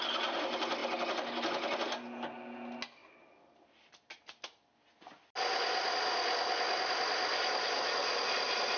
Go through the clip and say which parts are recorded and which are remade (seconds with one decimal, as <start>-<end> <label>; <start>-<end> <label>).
0.0-8.8 recorded